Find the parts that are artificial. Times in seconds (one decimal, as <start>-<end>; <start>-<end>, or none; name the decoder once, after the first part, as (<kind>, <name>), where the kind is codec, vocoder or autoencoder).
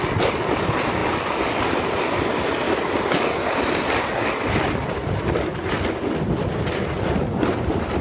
none